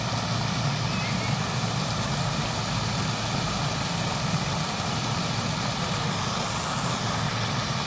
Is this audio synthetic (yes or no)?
no